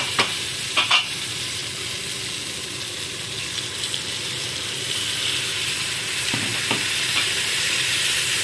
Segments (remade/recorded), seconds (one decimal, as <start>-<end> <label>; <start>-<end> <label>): 0.0-1.6 remade; 1.6-5.8 recorded; 5.8-6.5 remade; 6.5-7.1 recorded; 7.1-8.4 remade